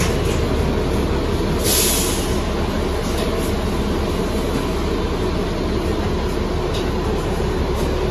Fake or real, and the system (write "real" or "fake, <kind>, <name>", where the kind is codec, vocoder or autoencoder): real